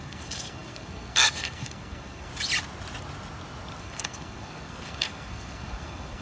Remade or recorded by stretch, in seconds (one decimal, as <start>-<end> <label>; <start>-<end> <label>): 0.0-2.3 remade; 2.3-3.8 recorded; 3.8-6.2 remade